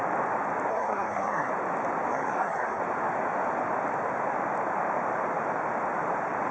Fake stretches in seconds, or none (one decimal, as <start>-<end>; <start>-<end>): 0.7-1.5; 2.1-2.8